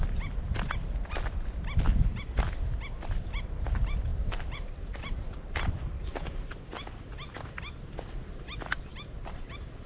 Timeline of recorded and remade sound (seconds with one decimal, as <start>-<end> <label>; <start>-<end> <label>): 0.0-4.1 recorded; 4.1-6.4 remade; 6.4-8.9 recorded; 8.9-9.9 remade